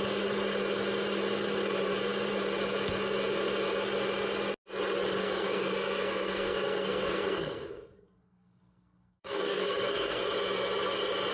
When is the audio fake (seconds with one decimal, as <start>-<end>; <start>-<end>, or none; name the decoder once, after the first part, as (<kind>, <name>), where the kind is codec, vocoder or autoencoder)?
5.2-10.2 (codec, SNAC)

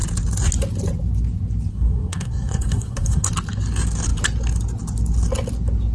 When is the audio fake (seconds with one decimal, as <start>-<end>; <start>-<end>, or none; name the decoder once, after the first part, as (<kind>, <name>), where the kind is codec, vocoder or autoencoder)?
1.7-3.3 (codec, SNAC)

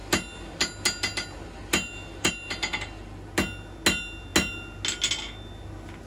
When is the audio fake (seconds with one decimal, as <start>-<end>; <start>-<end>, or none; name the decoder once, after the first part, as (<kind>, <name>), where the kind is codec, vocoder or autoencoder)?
none

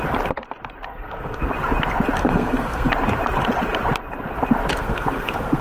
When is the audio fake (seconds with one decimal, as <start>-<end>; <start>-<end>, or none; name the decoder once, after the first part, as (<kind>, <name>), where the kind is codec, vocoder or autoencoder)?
0.9-1.5 (codec, SNAC); 2.2-2.9; 4.7-5.6